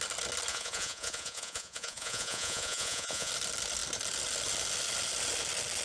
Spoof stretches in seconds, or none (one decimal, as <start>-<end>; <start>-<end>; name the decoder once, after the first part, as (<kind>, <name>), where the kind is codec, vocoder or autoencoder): 0.5-3.3 (vocoder, Vocos)